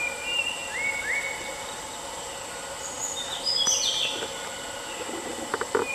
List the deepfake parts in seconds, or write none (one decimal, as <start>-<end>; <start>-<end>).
none